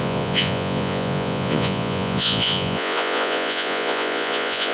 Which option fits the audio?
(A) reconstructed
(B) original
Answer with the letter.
A